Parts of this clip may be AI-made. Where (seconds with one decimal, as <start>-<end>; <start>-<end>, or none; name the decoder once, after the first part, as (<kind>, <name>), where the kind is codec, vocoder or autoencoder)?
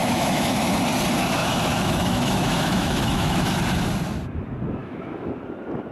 0.0-0.7 (autoencoder, DAC-VAE); 1.4-3.6; 4.8-5.3